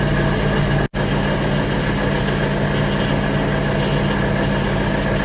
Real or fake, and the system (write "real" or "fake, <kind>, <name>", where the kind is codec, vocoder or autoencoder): real